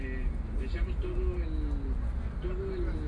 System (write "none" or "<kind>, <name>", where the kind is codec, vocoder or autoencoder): none